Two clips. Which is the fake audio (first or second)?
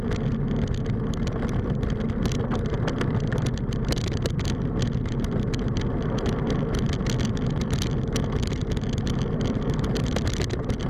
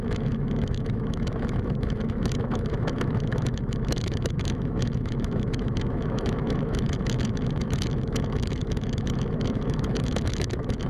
second